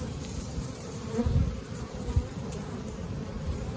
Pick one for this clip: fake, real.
fake